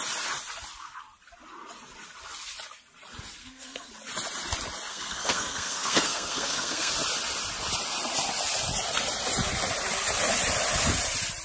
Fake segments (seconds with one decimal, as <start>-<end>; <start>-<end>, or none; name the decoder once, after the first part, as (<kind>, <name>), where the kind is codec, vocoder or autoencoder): 3.4-3.9 (codec, SNAC); 4.9-6.9